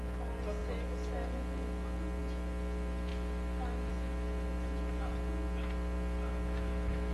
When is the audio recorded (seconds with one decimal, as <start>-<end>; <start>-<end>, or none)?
0.0-7.1